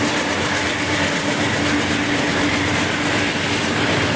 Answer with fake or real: real